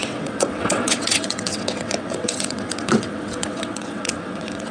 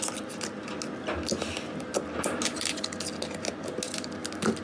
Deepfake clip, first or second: first